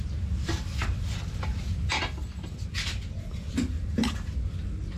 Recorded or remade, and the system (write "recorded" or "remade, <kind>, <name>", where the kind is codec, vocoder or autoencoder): recorded